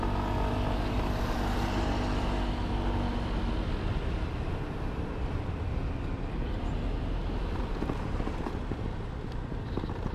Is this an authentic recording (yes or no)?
yes